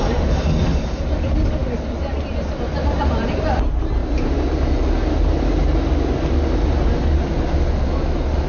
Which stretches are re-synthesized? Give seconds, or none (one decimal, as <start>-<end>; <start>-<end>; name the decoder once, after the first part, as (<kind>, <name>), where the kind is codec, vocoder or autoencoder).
none